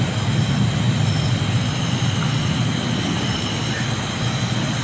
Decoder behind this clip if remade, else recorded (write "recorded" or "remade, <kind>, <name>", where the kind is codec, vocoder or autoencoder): recorded